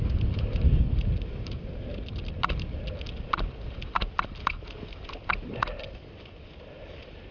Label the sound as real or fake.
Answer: real